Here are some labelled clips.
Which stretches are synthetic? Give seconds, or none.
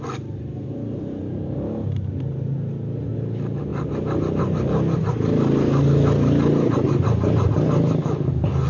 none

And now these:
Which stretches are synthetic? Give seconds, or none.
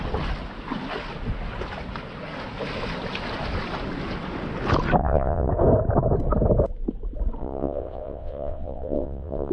5.0-5.5 (vocoder, WaveNeXt); 7.4-9.5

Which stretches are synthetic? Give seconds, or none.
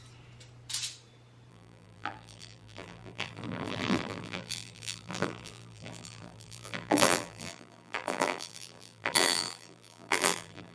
1.5-10.7 (vocoder, BigVGAN v2)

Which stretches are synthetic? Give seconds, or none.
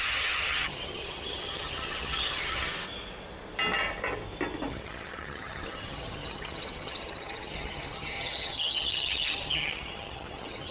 0.0-2.7 (vocoder, HiFi-GAN); 4.7-10.7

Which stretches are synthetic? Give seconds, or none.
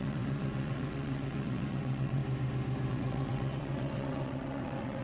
0.0-2.2 (vocoder, WaveNeXt); 2.9-5.0